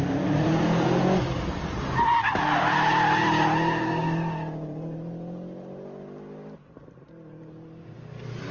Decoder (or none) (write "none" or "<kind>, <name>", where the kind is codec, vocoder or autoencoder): none